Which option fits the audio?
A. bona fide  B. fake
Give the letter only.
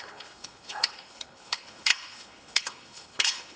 B